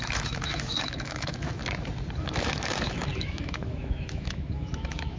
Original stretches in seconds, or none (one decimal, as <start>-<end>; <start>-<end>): 1.6-2.2